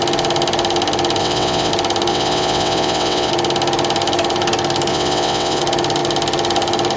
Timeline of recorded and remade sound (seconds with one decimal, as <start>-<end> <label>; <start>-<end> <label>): 0.0-1.2 recorded; 1.2-1.7 remade; 1.7-2.1 recorded; 2.1-3.3 remade; 3.3-4.9 recorded; 4.9-5.6 remade; 5.6-7.0 recorded